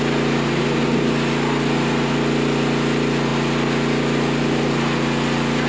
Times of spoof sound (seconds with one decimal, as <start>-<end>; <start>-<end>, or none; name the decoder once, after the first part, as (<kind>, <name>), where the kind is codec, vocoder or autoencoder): none